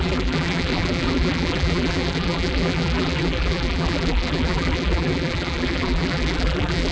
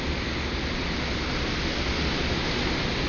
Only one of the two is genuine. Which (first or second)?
second